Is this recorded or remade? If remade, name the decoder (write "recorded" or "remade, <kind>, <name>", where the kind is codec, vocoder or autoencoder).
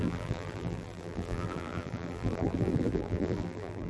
remade, vocoder, BigVGAN v2